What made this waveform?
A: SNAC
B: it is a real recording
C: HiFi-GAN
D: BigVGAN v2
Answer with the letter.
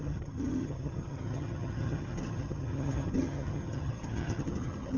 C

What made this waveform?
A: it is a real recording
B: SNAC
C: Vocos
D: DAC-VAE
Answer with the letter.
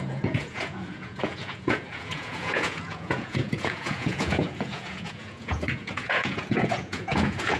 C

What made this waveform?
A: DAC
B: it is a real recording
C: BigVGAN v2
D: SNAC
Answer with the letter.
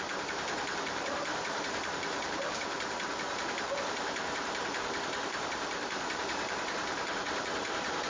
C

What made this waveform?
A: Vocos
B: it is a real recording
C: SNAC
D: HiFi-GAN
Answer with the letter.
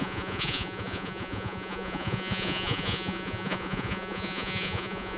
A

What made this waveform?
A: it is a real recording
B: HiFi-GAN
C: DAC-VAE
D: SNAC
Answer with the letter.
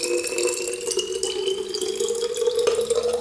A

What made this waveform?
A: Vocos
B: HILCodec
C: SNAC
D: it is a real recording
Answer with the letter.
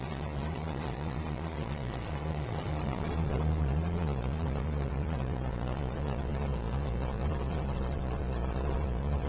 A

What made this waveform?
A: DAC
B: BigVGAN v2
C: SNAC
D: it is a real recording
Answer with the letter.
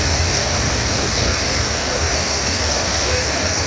A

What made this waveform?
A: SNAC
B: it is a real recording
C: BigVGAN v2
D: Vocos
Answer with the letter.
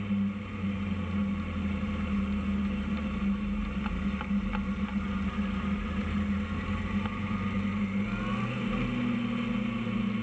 B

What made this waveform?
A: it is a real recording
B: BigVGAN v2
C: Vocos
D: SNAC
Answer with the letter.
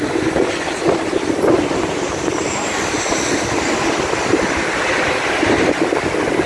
A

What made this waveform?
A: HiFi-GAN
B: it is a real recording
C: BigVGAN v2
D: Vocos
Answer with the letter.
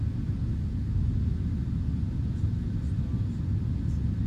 B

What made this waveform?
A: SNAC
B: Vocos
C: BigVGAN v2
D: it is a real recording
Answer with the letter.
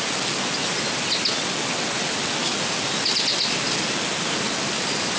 D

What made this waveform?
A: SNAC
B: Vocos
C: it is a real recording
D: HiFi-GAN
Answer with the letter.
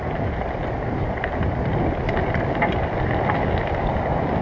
C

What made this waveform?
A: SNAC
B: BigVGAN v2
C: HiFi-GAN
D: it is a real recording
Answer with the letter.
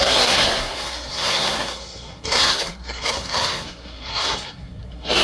A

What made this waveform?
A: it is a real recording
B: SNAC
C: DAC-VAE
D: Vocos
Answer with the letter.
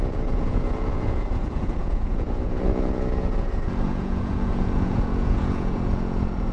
D